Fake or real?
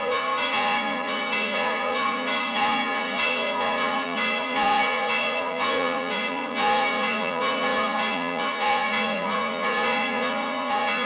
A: fake